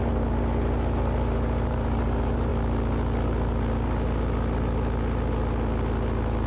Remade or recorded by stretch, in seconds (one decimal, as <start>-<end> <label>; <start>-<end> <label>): 0.0-2.5 remade; 2.5-6.5 recorded